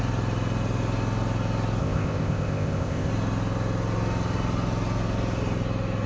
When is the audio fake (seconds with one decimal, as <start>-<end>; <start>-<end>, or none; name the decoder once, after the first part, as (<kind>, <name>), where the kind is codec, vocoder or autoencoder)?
1.8-3.1 (codec, ZipCodec)